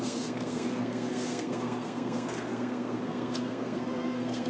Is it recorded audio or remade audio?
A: remade